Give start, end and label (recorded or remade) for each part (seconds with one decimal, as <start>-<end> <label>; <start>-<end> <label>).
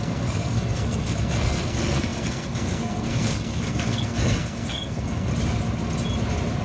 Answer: 0.0-5.3 remade; 5.3-6.6 recorded